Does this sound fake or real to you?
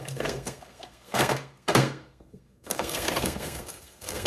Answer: fake